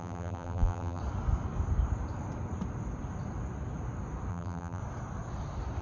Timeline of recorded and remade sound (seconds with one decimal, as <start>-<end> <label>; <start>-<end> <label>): 0.0-1.0 remade; 1.0-4.3 recorded; 4.3-4.8 remade; 4.8-5.8 recorded